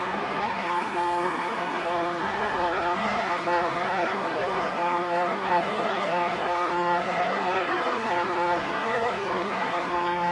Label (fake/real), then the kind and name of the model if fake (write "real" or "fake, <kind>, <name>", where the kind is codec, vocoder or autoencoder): fake, codec, SNAC